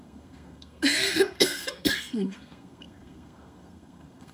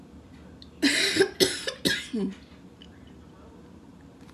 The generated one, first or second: first